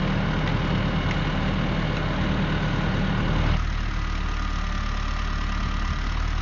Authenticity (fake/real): real